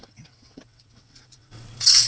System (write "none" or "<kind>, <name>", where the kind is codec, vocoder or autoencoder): vocoder, WaveNeXt